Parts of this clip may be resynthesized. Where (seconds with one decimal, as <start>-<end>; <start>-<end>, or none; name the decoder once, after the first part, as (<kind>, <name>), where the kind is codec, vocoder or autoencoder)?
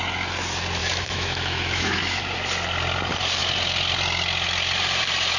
0.8-2.2 (autoencoder, DAC-VAE)